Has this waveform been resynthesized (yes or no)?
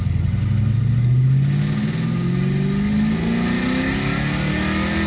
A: no